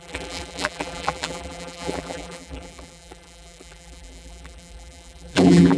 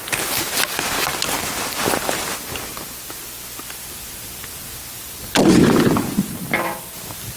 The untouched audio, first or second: second